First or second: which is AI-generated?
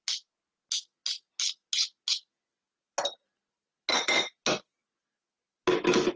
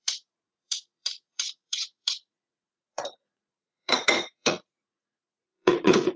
second